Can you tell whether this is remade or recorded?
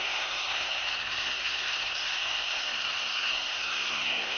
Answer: remade